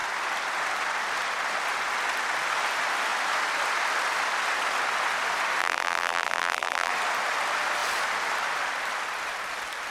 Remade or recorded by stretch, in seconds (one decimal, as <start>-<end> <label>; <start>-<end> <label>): 0.0-5.6 recorded; 5.6-6.9 remade; 6.9-9.9 recorded